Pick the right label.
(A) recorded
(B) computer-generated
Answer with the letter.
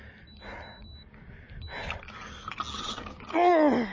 A